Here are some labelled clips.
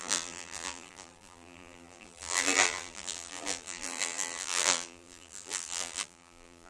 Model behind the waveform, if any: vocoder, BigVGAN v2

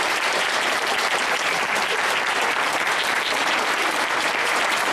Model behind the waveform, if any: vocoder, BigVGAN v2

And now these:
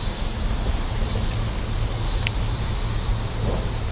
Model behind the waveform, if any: none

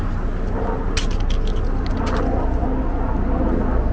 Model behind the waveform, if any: none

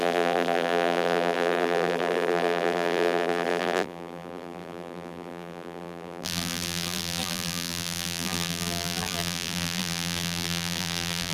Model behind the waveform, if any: vocoder, BigVGAN v2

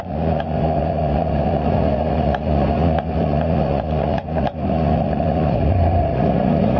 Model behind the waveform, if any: vocoder, Vocos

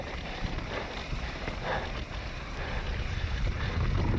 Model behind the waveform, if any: none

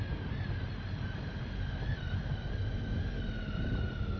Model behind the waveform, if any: none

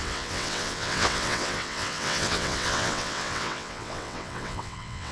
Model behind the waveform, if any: vocoder, WaveNeXt